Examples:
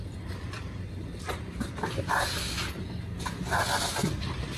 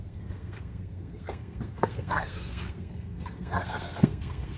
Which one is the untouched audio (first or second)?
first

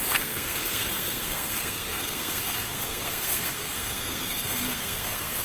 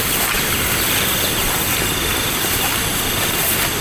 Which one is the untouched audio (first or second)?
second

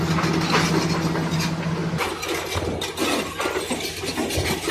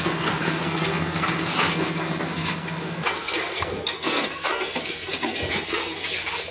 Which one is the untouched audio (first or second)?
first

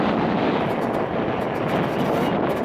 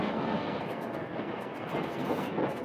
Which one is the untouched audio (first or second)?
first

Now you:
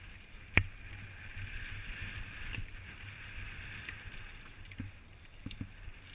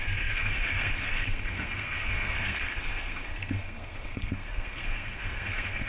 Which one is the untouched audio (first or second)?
first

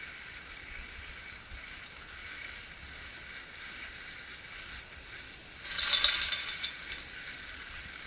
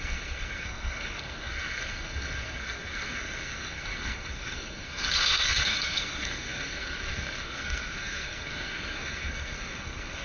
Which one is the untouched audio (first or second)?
first